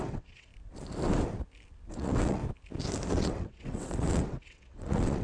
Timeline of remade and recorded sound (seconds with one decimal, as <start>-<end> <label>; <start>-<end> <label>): 0.0-0.5 remade; 0.5-1.9 recorded; 1.9-2.4 remade; 2.4-3.1 recorded; 3.1-5.2 remade